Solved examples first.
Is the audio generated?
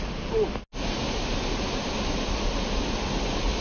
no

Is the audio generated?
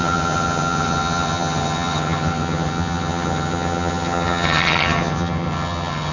yes